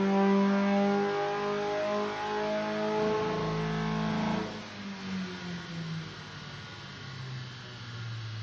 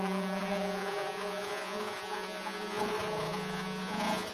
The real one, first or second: first